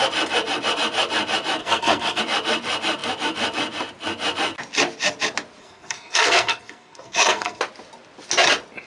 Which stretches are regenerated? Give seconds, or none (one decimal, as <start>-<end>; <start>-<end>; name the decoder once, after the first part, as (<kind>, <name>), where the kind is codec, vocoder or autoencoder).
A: 1.6-2.2 (codec, SNAC); 5.6-7.6